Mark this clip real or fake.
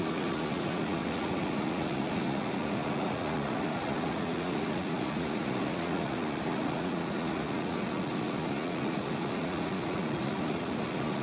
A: fake